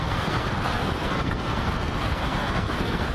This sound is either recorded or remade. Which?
remade